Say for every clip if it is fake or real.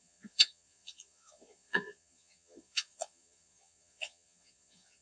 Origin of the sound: fake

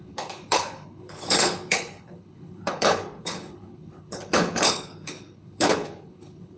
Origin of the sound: fake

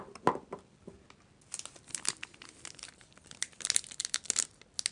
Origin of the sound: real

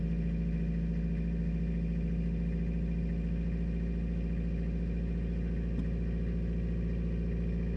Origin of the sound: real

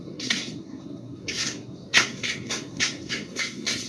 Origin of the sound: fake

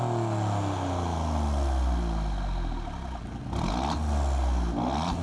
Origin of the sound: real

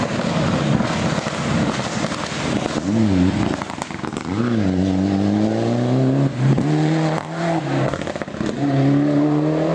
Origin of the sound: real